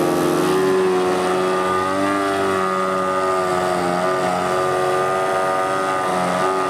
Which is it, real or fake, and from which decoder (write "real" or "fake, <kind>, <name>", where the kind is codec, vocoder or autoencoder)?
real